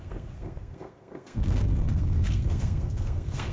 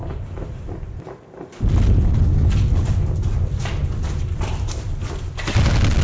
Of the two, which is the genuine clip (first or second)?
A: second